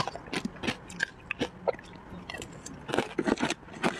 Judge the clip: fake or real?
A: real